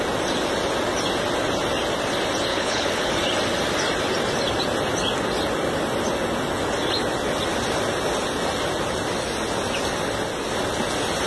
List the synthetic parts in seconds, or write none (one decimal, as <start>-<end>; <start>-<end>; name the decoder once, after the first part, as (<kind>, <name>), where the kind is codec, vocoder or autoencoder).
2.5-3.1 (codec, HILCodec)